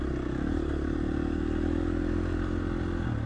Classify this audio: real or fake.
real